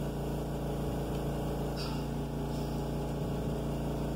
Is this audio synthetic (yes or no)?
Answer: no